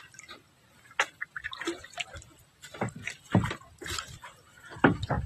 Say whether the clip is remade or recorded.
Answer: recorded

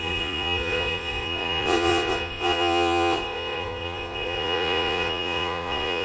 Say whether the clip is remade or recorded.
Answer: remade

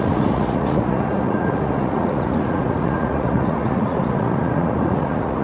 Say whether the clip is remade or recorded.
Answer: remade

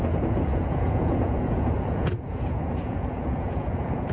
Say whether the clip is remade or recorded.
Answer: remade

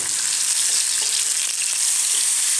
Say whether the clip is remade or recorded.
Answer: recorded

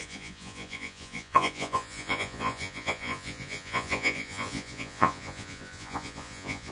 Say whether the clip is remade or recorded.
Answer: remade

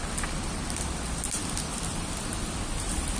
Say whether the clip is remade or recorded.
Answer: recorded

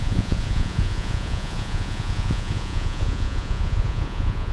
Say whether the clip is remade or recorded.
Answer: remade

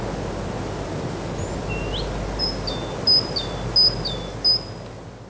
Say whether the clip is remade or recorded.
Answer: recorded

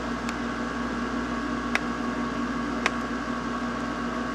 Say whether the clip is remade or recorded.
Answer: recorded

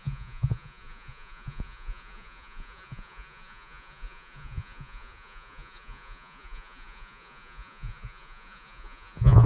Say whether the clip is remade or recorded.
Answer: remade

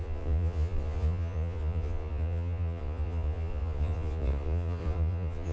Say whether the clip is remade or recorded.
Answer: remade